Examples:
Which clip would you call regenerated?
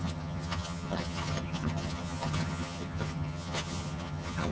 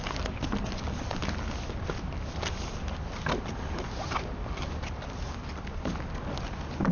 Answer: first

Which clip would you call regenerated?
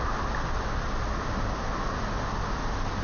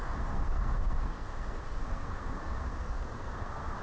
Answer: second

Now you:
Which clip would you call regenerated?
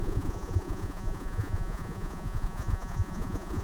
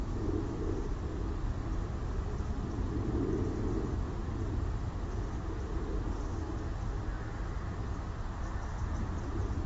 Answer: first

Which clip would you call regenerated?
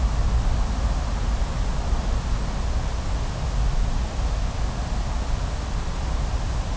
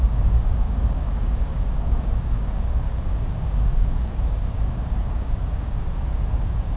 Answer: second